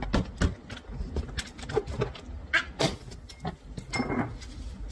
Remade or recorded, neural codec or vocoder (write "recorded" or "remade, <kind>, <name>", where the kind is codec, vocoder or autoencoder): recorded